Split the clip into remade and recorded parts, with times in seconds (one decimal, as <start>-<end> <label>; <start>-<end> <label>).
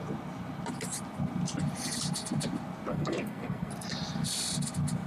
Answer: 0.0-2.9 recorded; 2.9-3.7 remade; 3.7-5.1 recorded